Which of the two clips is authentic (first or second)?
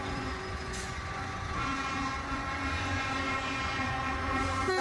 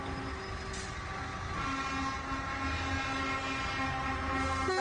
second